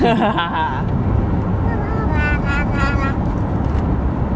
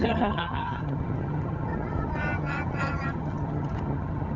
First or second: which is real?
first